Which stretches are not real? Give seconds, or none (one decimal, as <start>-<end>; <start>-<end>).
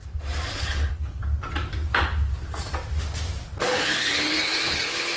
0.5-1.2; 3.6-5.2